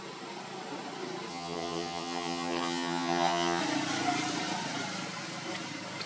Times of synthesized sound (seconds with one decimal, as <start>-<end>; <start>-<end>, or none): 1.3-3.6

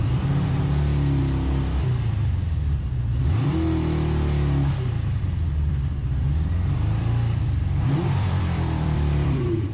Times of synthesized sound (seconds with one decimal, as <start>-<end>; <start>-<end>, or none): 0.0-1.2; 5.2-9.7

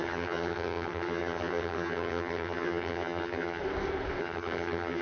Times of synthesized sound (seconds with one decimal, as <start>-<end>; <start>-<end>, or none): 0.0-3.6; 4.2-5.0

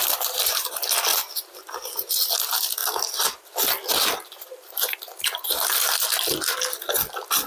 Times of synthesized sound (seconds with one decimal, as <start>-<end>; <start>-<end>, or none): 0.0-0.6; 1.1-2.1

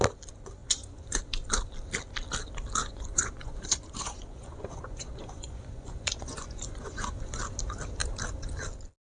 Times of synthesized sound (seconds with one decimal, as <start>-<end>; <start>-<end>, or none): 0.6-1.2; 2.8-7.4

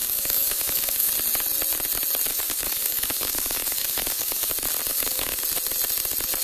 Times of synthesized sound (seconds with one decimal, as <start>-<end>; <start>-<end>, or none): 0.0-1.1; 2.3-4.5; 4.9-5.4